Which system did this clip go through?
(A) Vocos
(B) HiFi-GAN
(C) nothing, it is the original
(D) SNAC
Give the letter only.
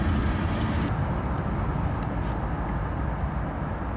C